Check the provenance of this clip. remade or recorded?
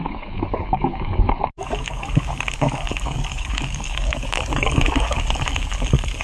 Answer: remade